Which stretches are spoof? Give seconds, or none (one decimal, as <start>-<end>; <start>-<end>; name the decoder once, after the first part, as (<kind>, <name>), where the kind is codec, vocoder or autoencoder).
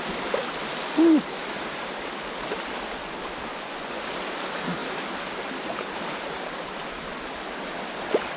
3.5-4.0 (vocoder, Vocos)